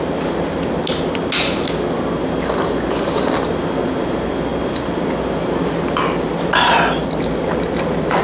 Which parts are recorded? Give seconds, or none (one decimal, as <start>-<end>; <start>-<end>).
0.0-8.2